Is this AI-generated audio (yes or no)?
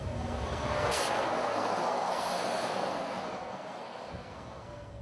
yes